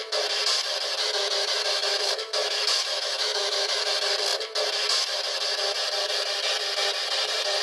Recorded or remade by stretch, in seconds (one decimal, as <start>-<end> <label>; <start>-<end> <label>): 0.0-1.8 recorded; 1.8-3.9 remade; 3.9-7.6 recorded